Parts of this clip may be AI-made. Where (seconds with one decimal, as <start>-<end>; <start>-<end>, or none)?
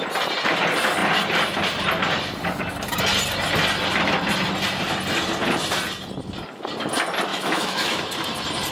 7.3-8.0